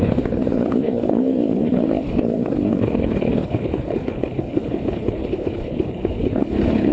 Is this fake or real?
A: fake